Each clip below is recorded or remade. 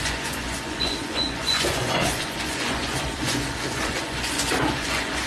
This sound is remade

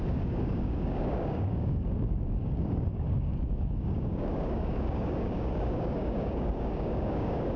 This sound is remade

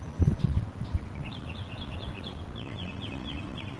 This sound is remade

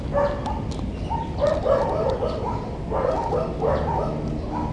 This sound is recorded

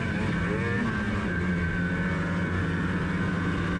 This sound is recorded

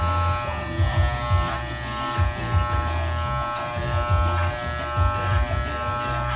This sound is recorded